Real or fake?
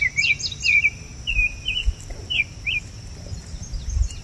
real